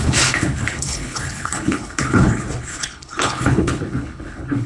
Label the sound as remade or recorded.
remade